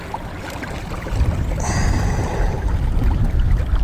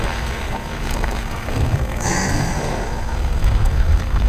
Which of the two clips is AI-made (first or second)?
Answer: second